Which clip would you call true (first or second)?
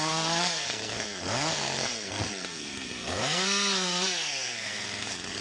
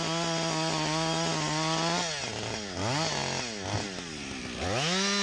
second